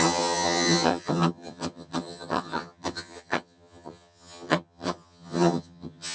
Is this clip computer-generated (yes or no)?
yes